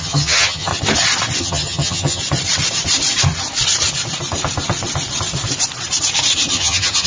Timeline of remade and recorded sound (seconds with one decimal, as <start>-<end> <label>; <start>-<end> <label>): 0.0-0.7 remade; 0.7-1.4 recorded; 1.4-2.2 remade; 2.2-6.5 recorded; 6.5-7.1 remade